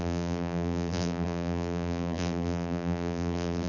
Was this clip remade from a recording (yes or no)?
yes